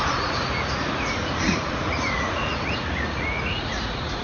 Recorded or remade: remade